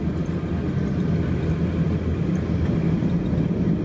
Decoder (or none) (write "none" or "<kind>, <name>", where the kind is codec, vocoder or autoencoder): none